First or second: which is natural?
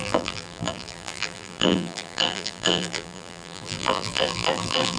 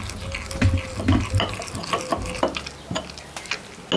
second